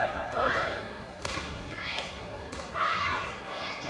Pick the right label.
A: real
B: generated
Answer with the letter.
B